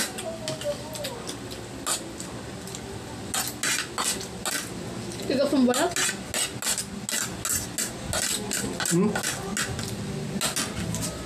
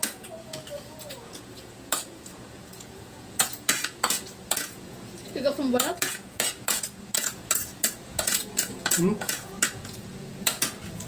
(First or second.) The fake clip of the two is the second